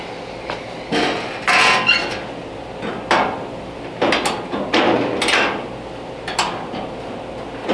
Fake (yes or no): no